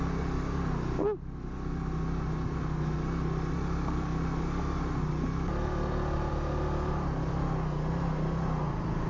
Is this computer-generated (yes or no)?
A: no